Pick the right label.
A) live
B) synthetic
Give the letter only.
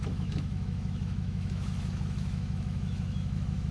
B